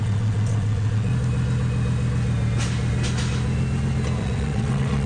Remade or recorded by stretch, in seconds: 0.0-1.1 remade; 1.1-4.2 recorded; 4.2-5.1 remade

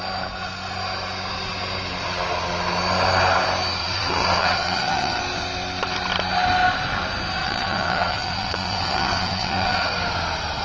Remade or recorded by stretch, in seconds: 0.0-3.8 recorded; 3.8-5.2 remade; 5.2-7.4 recorded; 7.4-9.9 remade; 9.9-10.6 recorded

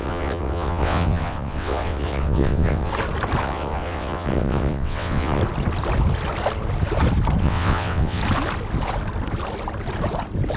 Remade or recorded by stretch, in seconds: 0.0-2.9 remade; 2.9-3.4 recorded; 3.4-5.4 remade; 5.4-7.4 recorded; 7.4-8.2 remade; 8.2-10.6 recorded

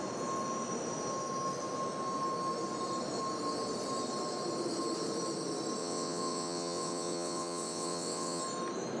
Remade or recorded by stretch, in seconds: 0.0-5.8 recorded; 5.8-8.4 remade; 8.4-9.0 recorded

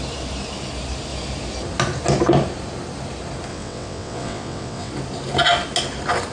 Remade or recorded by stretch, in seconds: 0.0-3.5 recorded; 3.5-4.9 remade; 4.9-6.3 recorded